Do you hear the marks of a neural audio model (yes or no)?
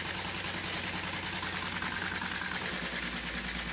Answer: no